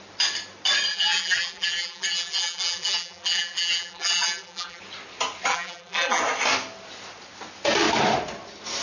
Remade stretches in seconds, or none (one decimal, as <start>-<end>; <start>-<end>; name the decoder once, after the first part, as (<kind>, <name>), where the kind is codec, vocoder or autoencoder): 0.9-4.8 (vocoder, BigVGAN v2); 5.5-6.2